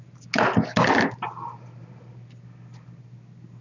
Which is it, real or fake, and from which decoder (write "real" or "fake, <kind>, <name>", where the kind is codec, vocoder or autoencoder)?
real